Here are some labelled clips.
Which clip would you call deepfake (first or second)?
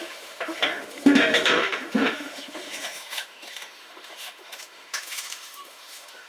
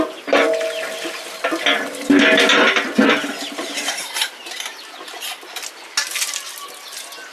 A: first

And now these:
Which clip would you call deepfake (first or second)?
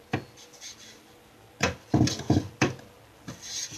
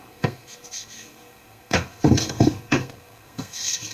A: second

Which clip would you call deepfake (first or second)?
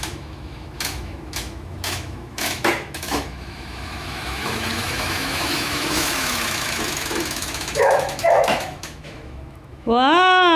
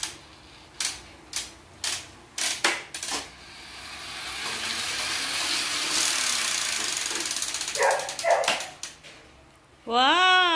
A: first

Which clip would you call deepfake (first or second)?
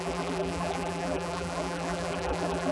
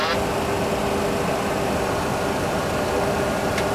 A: first